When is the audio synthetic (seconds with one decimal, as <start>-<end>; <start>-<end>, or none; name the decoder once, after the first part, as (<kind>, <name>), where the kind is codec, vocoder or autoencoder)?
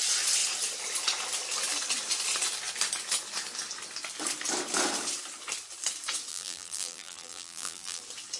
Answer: 6.3-8.0 (vocoder, BigVGAN v2)